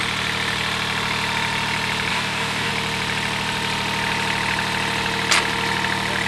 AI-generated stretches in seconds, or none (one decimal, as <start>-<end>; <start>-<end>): 2.1-2.7